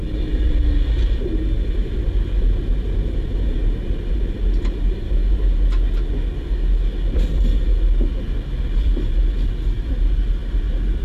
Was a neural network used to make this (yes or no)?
no